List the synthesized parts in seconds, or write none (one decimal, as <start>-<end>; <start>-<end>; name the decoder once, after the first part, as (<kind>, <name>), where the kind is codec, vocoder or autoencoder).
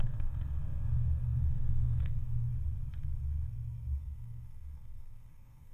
0.0-2.5 (codec, SNAC); 4.0-5.7